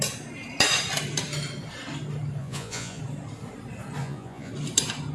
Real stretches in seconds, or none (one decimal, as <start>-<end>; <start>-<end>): 0.0-2.4; 3.0-4.0; 4.5-5.1